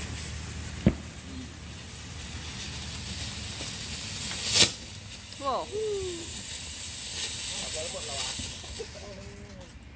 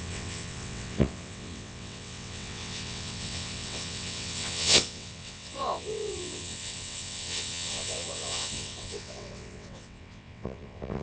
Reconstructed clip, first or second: second